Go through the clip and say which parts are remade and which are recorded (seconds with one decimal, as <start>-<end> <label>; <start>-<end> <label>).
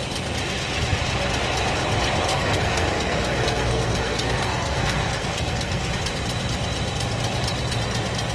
0.0-2.3 recorded; 2.3-5.9 remade; 5.9-8.3 recorded